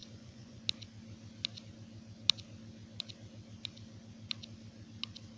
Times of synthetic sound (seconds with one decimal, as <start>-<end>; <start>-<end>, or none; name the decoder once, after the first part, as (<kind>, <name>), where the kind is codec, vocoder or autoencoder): 0.0-0.6 (vocoder, Vocos)